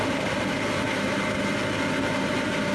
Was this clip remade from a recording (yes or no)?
no